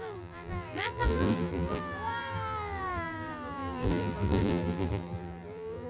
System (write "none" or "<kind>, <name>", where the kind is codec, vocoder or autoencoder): vocoder, BigVGAN v2